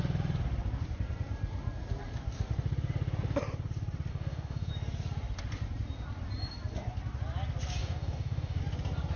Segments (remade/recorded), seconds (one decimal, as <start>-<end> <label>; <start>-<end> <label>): 0.0-4.1 recorded; 4.1-4.7 remade; 4.7-7.8 recorded; 7.8-8.6 remade; 8.6-9.2 recorded